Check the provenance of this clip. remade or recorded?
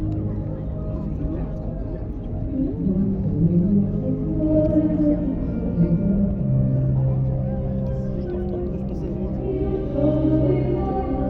recorded